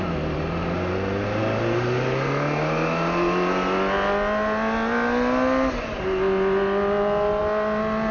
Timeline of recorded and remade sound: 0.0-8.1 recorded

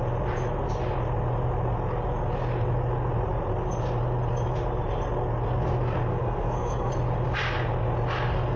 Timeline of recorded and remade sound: 0.0-6.1 recorded; 6.1-6.9 remade; 6.9-8.6 recorded

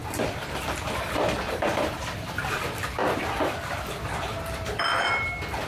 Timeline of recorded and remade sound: 0.0-1.9 remade; 1.9-3.0 recorded; 3.0-4.8 remade; 4.8-5.7 recorded